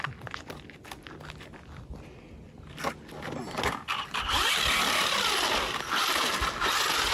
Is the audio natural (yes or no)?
yes